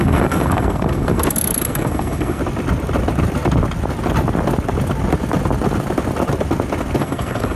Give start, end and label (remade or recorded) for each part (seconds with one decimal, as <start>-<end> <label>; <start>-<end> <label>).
0.0-2.4 remade; 2.4-7.0 recorded; 7.0-7.6 remade